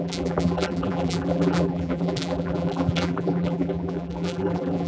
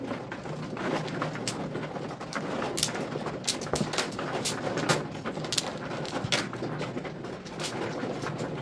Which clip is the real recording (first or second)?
second